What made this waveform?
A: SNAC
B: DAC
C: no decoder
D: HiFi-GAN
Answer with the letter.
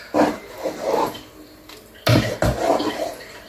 C